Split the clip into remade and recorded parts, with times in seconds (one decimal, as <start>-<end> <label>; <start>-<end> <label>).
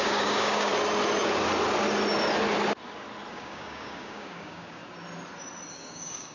0.0-0.7 remade; 0.7-3.3 recorded; 3.3-4.8 remade; 4.8-5.7 recorded; 5.7-6.3 remade